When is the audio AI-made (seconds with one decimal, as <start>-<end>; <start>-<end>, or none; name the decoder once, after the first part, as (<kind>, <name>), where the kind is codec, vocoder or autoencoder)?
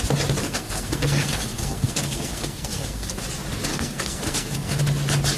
0.4-3.2 (codec, SNAC); 3.7-4.8